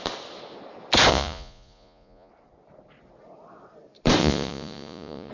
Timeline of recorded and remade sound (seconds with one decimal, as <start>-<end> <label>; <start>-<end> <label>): 0.0-1.1 recorded; 1.1-2.3 remade; 2.3-4.2 recorded; 4.2-5.3 remade